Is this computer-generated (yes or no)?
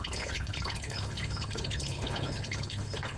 yes